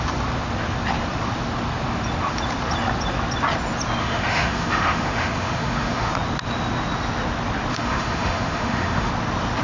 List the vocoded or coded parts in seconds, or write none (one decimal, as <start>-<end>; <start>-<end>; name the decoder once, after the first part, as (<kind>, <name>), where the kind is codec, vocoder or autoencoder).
4.0-6.1 (autoencoder, DAC-VAE); 7.7-9.1